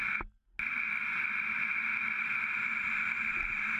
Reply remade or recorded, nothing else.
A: recorded